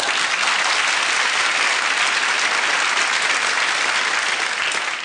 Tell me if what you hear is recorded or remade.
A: recorded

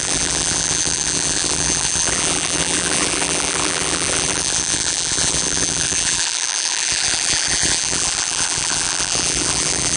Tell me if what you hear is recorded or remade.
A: remade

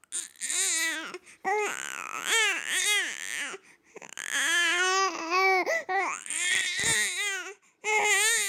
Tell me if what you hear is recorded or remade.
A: recorded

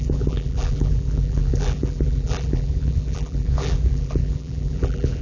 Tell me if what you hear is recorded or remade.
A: remade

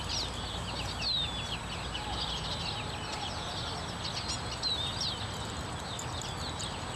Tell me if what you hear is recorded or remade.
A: recorded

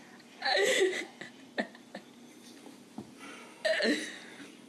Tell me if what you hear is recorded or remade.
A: recorded